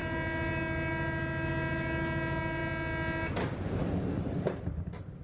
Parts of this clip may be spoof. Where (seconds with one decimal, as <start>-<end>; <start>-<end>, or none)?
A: none